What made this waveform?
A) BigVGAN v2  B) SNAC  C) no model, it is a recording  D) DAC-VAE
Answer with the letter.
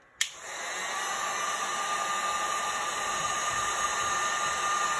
C